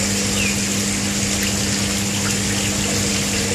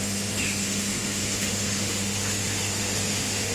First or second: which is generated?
second